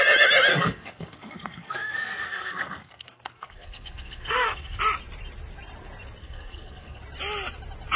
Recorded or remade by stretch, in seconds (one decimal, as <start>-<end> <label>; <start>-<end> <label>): 0.0-0.5 recorded; 0.5-4.8 remade; 4.8-6.2 recorded; 6.2-7.0 remade; 7.0-8.0 recorded